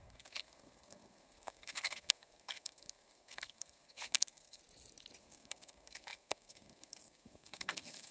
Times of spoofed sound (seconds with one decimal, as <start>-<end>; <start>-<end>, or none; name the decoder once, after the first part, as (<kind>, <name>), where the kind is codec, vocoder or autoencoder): 0.0-4.6 (codec, SNAC); 5.2-8.1